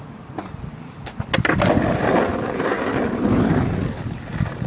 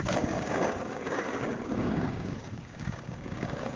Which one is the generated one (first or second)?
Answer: second